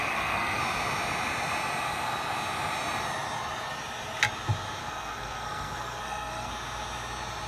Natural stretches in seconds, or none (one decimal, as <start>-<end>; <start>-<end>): 0.6-4.8; 6.5-7.5